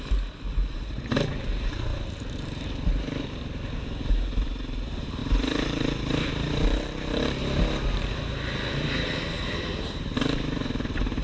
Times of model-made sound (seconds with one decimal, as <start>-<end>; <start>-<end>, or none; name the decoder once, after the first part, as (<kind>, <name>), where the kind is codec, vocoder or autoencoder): 0.0-7.4 (vocoder, BigVGAN v2); 7.9-11.2